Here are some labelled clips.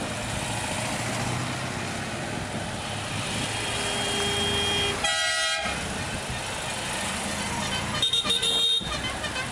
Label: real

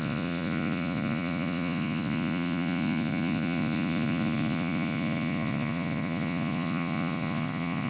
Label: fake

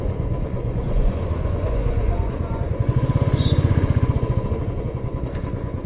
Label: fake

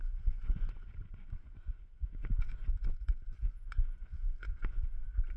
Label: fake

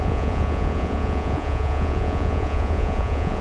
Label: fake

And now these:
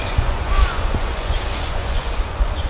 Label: fake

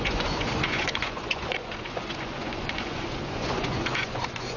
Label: fake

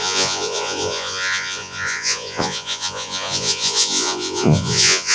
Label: fake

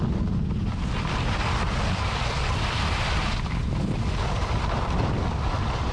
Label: real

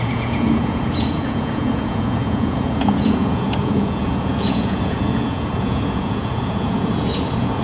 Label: fake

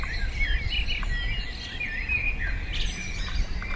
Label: real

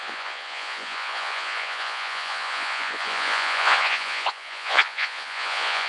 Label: fake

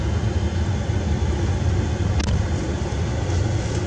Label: real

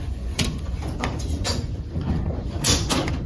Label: fake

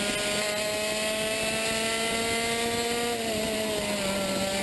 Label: real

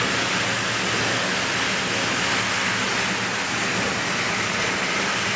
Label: real